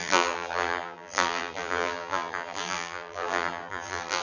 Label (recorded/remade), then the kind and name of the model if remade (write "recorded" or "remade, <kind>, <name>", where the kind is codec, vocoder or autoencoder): remade, vocoder, BigVGAN v2